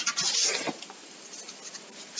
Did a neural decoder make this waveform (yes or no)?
no